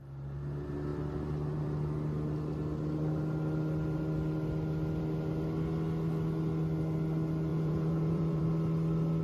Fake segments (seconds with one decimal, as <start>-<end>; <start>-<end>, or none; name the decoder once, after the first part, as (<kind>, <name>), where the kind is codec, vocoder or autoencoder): 7.5-8.4 (vocoder, Vocos)